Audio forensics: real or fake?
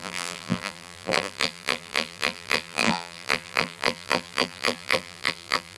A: fake